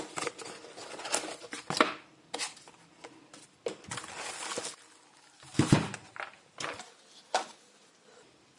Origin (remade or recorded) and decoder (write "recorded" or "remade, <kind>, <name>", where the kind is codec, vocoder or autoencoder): recorded